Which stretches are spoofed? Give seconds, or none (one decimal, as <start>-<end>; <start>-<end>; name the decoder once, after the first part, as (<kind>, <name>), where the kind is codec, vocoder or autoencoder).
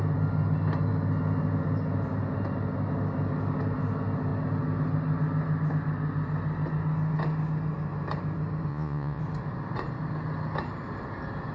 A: 8.7-9.2 (vocoder, Vocos)